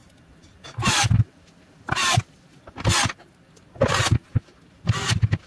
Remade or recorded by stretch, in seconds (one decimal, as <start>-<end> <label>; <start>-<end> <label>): 0.0-5.5 recorded